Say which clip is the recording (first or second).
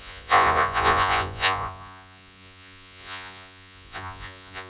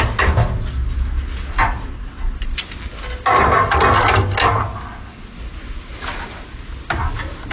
second